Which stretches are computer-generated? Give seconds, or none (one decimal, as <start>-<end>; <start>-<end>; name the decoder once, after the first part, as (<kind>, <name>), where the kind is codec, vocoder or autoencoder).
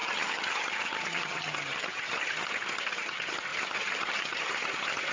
0.0-5.1 (vocoder, HiFi-GAN)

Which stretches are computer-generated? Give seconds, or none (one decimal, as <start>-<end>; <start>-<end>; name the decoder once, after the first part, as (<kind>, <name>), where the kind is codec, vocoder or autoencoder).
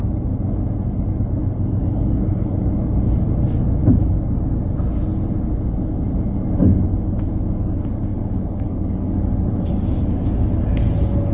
1.8-2.5 (codec, DAC); 8.1-9.7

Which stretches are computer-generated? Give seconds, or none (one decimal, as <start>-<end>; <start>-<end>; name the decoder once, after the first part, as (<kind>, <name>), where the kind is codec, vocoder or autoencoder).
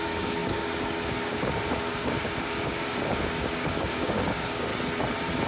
0.0-4.7 (codec, DAC)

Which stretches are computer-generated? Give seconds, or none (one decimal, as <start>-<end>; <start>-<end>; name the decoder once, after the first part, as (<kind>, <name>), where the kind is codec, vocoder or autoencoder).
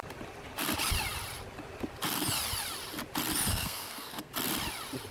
3.5-4.3 (codec, SNAC)